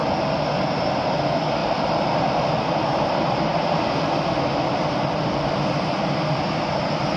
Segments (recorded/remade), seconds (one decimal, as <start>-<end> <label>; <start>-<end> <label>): 0.0-7.2 remade